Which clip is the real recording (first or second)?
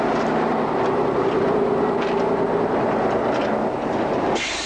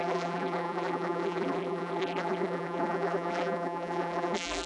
first